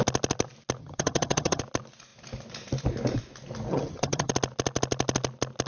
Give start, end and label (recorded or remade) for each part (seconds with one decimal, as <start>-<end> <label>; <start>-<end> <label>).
0.0-0.8 recorded; 0.8-1.6 remade; 1.6-3.7 recorded; 3.7-4.3 remade; 4.3-5.7 recorded